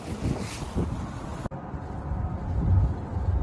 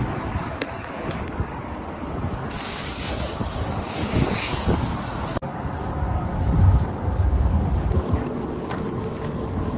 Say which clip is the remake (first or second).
second